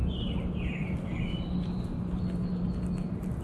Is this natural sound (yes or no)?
yes